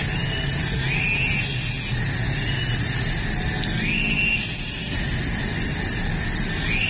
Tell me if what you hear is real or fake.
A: real